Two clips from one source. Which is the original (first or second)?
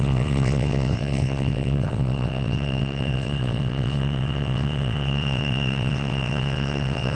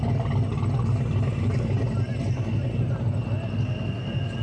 second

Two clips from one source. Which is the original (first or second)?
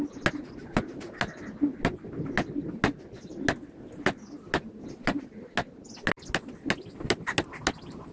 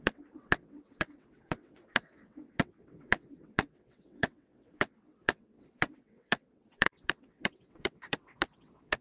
first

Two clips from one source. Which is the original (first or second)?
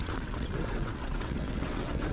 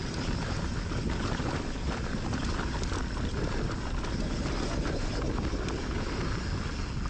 second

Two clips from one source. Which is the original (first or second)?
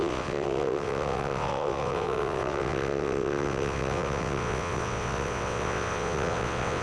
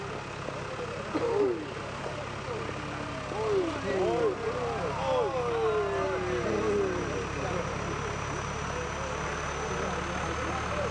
second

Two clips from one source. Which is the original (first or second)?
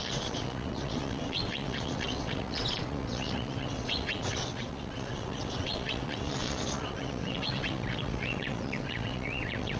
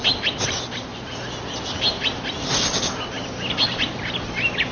second